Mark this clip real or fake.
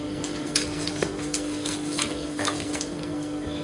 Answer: fake